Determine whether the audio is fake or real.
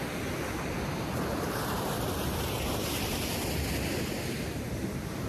real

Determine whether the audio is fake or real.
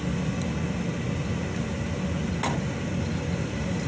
real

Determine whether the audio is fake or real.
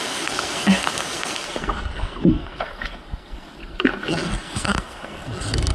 fake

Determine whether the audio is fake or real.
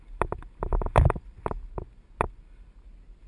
real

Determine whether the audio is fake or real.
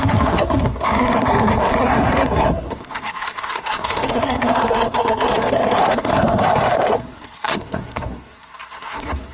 fake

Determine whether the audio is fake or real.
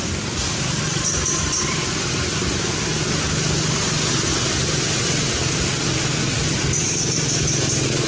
real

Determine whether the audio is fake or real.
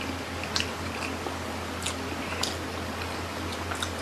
real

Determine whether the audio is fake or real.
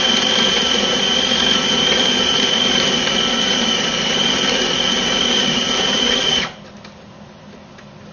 real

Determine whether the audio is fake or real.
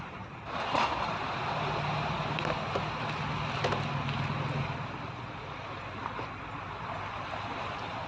real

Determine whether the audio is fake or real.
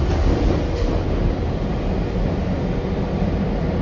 real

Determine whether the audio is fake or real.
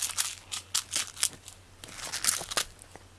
real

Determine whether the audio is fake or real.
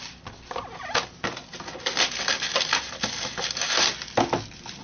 real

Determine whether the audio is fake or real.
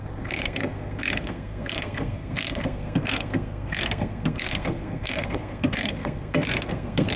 fake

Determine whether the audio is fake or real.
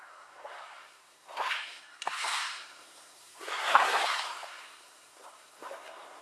fake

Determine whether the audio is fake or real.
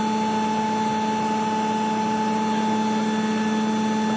real